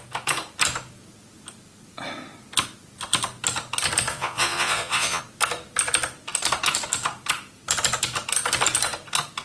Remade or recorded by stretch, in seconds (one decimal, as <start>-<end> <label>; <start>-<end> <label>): 0.0-4.1 recorded; 4.1-5.2 remade; 5.2-9.4 recorded